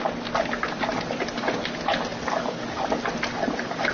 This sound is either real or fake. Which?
real